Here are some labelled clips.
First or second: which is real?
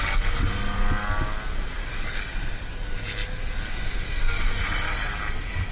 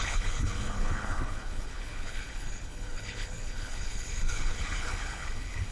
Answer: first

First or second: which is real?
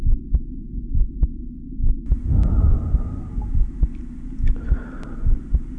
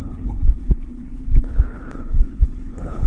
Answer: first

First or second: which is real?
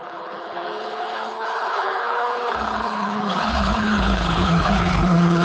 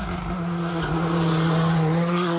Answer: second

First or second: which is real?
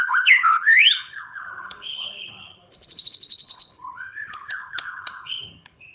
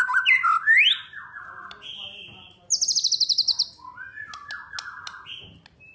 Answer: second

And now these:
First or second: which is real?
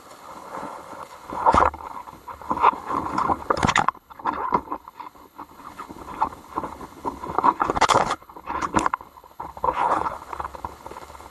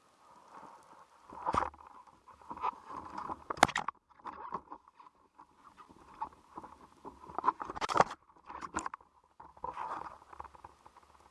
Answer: second